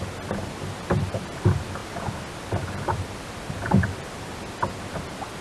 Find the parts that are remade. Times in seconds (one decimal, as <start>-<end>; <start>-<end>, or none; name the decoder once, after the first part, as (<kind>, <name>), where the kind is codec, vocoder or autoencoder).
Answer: none